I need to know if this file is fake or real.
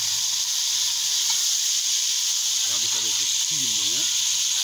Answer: real